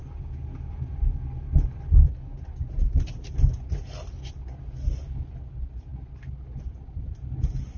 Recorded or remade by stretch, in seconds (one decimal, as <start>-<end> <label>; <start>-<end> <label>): 0.0-7.8 recorded

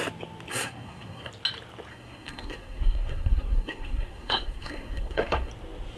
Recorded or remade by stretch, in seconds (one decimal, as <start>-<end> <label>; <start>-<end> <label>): 0.0-0.5 recorded; 0.5-1.3 remade; 1.3-1.9 recorded; 1.9-5.5 remade; 5.5-6.0 recorded